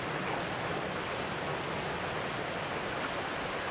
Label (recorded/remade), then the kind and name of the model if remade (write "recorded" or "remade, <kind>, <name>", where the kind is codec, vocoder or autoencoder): recorded